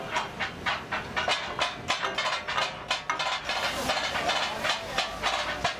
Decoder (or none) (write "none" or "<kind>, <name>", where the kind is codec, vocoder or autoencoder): none